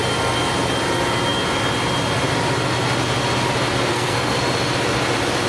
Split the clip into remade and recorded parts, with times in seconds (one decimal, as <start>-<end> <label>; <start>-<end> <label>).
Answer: 0.0-3.9 recorded; 3.9-4.4 remade; 4.4-5.5 recorded